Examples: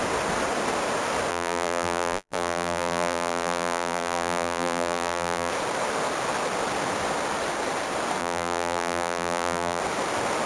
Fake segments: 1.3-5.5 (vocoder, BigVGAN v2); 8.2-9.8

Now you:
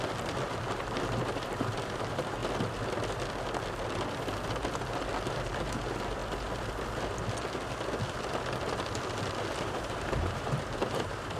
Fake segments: 0.0-2.4 (vocoder, BigVGAN v2); 5.2-6.2; 9.6-11.4